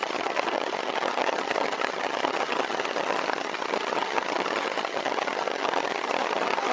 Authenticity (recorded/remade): remade